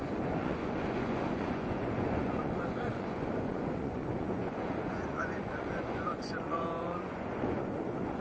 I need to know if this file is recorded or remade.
remade